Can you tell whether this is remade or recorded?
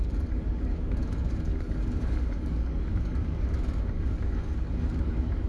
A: remade